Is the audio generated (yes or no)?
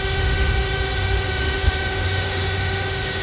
yes